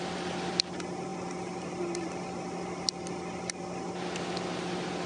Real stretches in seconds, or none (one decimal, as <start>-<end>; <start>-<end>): 0.0-5.1